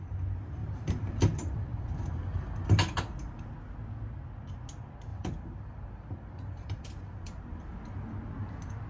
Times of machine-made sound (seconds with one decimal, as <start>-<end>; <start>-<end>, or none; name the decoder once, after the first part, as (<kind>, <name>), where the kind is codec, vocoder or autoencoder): 0.6-2.0 (vocoder, BigVGAN v2); 5.1-7.6